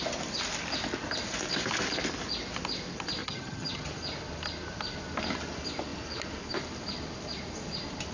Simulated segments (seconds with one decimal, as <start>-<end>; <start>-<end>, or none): 3.2-3.9

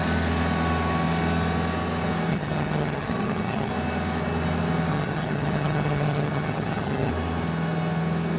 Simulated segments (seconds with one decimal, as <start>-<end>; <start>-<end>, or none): 2.3-3.7; 4.9-7.1